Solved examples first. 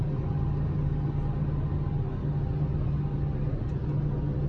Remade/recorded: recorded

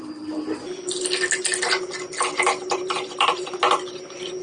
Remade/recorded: recorded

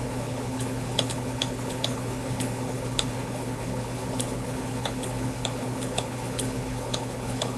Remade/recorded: remade